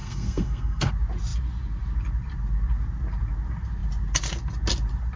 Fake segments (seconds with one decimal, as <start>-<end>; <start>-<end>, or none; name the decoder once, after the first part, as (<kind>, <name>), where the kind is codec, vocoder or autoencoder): 0.0-0.9 (codec, SNAC)